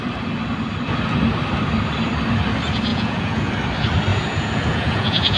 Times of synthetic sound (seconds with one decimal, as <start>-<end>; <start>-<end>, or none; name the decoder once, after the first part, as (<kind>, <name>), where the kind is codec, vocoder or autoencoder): 2.9-3.5 (vocoder, Vocos); 4.1-5.4